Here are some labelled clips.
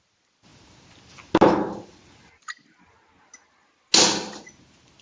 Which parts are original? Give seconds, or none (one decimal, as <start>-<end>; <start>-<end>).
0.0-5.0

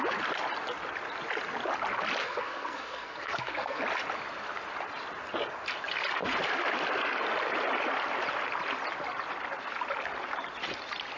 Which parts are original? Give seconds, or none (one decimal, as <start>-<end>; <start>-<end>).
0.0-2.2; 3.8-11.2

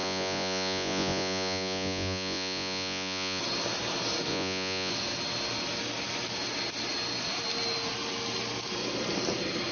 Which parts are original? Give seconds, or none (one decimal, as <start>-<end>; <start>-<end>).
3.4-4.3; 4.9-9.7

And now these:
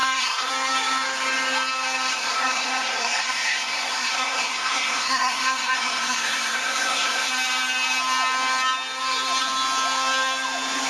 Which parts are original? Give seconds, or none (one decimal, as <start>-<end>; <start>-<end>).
0.5-2.1; 7.3-10.9